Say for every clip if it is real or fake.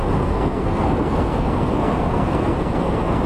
fake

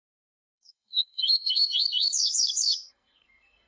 fake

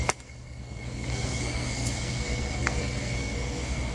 fake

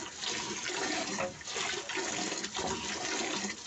real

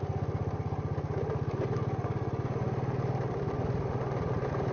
real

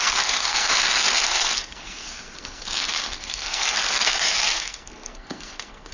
fake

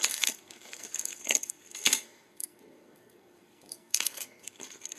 fake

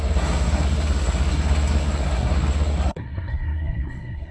fake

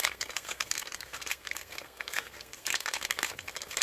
fake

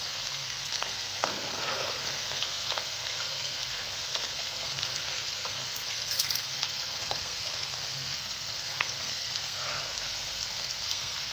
fake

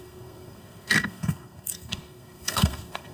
fake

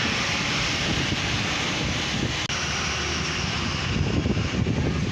real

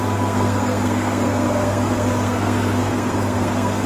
fake